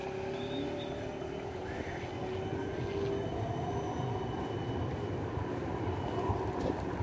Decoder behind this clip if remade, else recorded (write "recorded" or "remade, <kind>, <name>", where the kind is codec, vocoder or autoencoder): recorded